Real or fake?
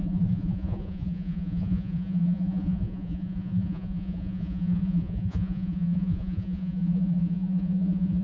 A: fake